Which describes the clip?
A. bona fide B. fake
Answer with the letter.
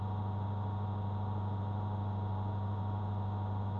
A